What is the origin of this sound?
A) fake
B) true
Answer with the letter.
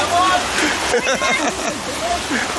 A